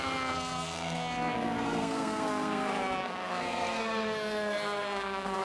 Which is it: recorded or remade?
remade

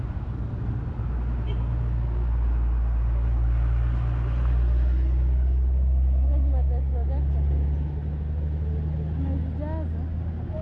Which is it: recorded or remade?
recorded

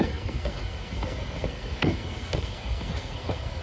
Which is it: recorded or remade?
remade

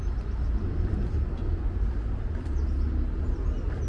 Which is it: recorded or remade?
recorded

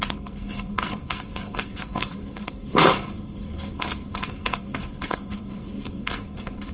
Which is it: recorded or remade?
remade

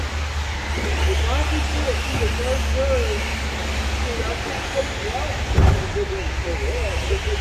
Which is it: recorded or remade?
recorded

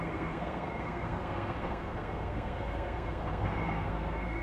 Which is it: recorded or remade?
remade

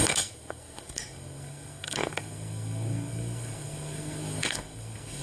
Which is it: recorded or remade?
remade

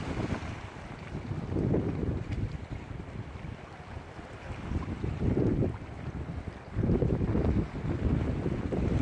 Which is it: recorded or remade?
recorded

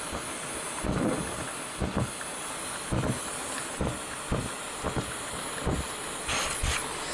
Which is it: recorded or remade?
recorded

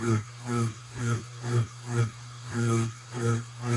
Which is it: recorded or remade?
remade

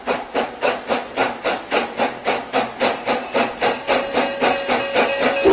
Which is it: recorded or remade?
recorded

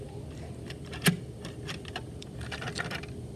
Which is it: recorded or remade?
recorded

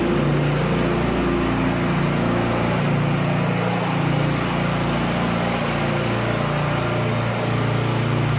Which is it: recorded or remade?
recorded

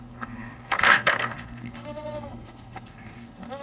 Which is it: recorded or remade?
remade